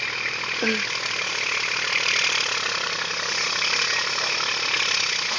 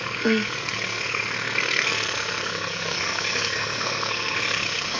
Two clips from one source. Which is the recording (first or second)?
first